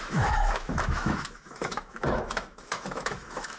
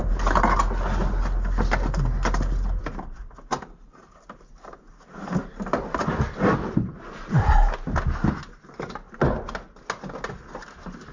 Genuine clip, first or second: second